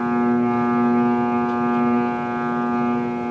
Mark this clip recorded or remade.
recorded